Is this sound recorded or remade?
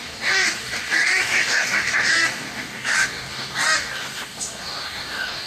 remade